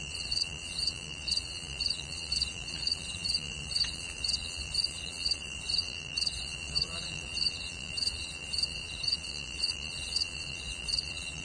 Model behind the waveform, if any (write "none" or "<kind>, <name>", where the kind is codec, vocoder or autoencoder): vocoder, Vocos